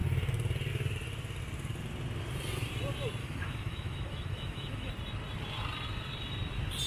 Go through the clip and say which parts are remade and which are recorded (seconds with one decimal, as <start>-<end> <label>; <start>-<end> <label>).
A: 0.0-3.2 recorded; 3.2-4.9 remade; 4.9-6.9 recorded